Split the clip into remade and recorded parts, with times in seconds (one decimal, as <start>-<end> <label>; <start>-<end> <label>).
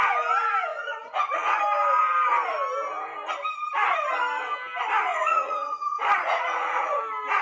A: 0.0-0.7 recorded; 0.7-1.6 remade; 1.6-5.1 recorded; 5.1-7.0 remade; 7.0-7.4 recorded